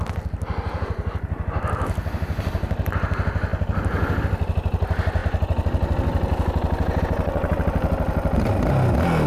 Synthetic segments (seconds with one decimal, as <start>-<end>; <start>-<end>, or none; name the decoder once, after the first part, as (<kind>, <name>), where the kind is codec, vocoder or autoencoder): none